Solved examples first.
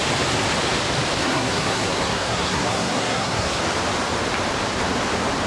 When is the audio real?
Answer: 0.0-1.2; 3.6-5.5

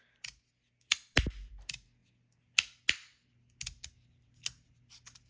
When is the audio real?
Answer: 0.0-5.3

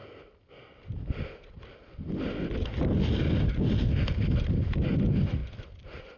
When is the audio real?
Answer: 0.0-6.2

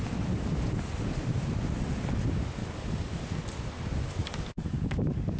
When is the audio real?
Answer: 0.0-2.6; 3.2-4.2

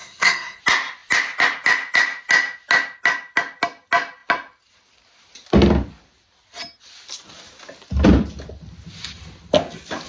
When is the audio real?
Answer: 0.6-10.1